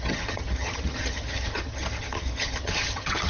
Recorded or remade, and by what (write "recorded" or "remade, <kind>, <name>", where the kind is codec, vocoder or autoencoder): remade, vocoder, HiFi-GAN